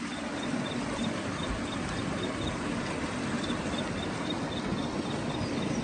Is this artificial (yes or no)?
no